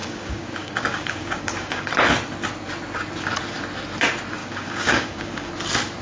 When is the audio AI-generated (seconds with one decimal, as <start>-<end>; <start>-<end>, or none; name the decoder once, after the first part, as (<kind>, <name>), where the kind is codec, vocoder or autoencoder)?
0.0-1.9 (codec, DAC); 4.4-5.5